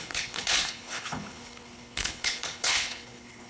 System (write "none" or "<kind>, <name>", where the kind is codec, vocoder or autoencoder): codec, HILCodec